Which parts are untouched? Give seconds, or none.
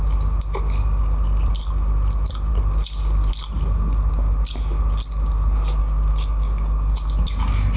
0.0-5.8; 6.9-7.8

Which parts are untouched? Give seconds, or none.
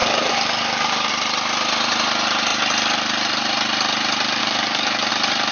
1.1-4.4; 5.1-5.5